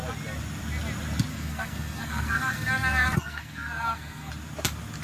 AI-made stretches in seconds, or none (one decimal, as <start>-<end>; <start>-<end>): 1.3-4.3